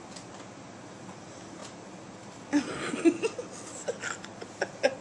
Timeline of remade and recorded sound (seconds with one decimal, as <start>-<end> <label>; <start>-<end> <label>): 0.0-5.0 recorded